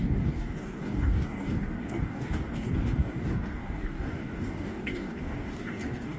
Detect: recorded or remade remade